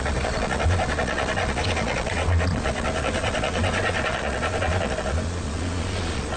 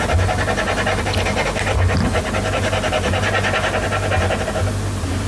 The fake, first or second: first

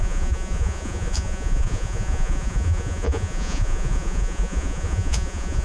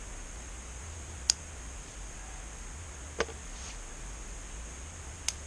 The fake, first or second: first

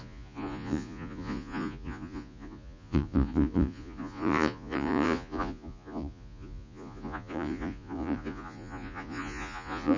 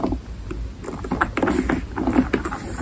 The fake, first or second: first